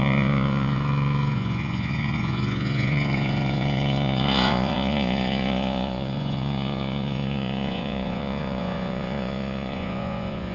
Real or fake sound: fake